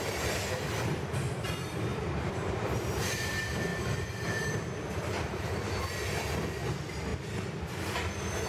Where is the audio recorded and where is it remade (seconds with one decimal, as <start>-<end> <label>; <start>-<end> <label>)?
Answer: 0.0-1.9 recorded; 1.9-3.3 remade; 3.3-3.7 recorded; 3.7-5.8 remade; 5.8-8.5 recorded